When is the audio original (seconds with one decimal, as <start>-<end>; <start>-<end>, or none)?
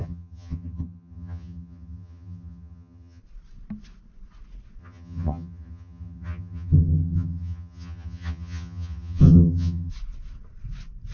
3.2-4.8; 9.9-11.1